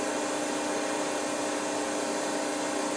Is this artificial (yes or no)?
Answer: no